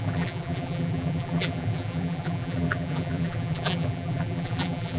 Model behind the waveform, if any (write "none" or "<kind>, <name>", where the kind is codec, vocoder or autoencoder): vocoder, BigVGAN v2